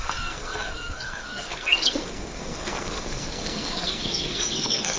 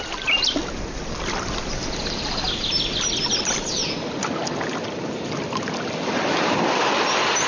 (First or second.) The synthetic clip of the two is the first